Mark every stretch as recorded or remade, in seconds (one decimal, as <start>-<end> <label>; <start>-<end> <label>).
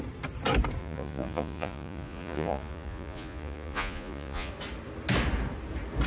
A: 0.0-0.8 recorded; 0.8-4.5 remade; 4.5-6.1 recorded